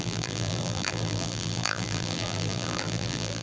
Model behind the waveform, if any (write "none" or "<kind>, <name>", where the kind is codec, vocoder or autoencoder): vocoder, BigVGAN v2